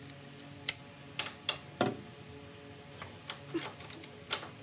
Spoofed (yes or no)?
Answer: no